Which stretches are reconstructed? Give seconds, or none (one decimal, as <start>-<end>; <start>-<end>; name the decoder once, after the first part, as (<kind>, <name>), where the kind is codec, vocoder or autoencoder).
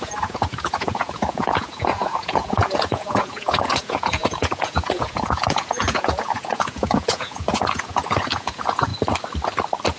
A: 0.0-8.9 (vocoder, Vocos)